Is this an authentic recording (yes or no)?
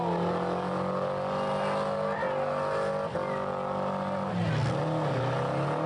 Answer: yes